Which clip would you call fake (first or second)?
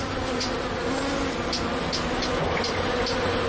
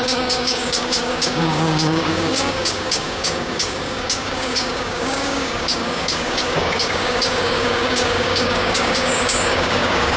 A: second